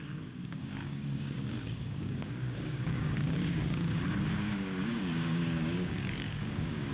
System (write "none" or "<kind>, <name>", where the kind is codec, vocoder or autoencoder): codec, DAC